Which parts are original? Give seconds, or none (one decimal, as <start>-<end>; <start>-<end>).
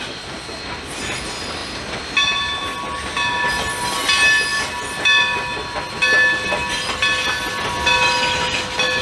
0.0-9.0